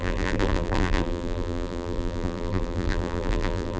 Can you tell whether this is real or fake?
fake